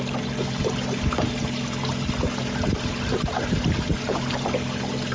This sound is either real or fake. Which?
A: real